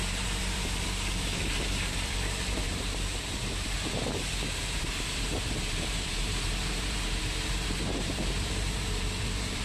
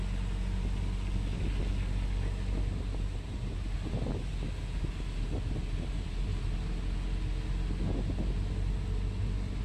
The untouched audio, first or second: second